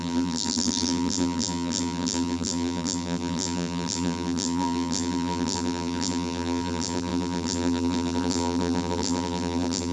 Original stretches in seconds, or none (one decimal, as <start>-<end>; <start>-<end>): none